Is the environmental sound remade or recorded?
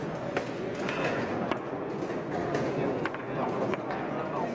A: remade